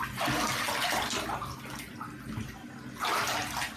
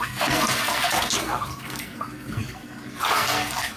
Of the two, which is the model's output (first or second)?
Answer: second